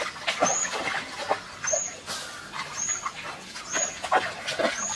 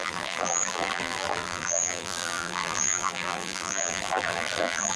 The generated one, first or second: second